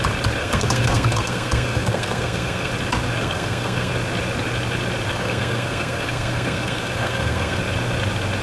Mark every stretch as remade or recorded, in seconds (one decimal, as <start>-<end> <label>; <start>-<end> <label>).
0.0-0.4 recorded; 0.4-2.7 remade; 2.7-3.2 recorded; 3.2-3.9 remade; 3.9-5.1 recorded; 5.1-7.6 remade; 7.6-8.4 recorded